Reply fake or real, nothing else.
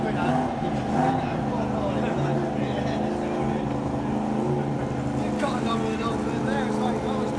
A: real